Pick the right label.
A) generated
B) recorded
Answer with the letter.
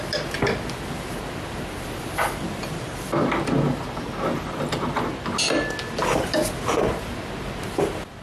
B